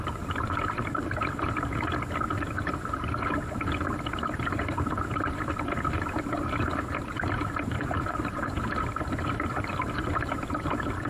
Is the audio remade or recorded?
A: remade